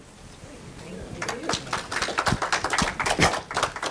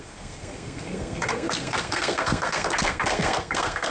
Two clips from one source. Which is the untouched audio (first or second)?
first